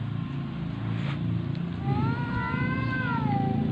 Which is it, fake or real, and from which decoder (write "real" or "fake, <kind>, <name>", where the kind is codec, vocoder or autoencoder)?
real